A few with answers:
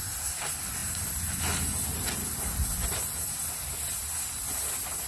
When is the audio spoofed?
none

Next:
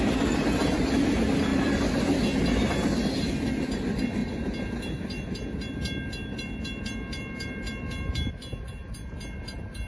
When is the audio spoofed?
none

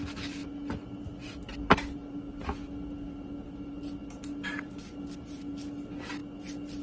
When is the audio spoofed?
none

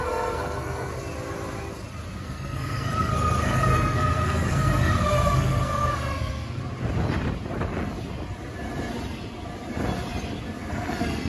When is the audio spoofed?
0.0-0.9 (codec, SNAC); 2.2-6.6; 10.7-11.3